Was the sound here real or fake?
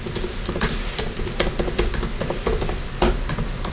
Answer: real